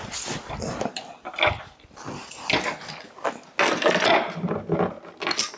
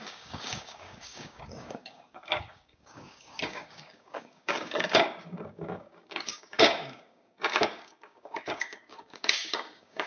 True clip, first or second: first